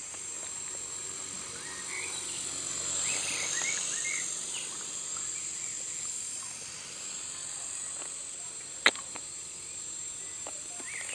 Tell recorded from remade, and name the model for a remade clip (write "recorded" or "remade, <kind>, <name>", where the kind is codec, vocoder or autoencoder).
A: recorded